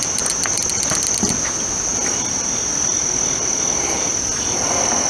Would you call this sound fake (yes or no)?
no